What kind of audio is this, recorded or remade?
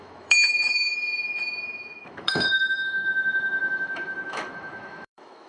remade